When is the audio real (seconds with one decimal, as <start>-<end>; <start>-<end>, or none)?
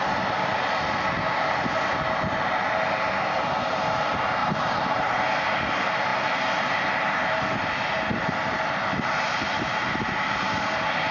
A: 0.0-4.4; 5.2-11.1